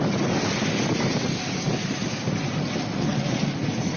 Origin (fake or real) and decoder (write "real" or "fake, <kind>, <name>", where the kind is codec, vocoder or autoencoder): real